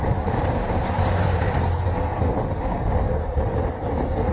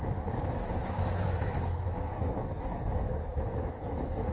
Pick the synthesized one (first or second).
second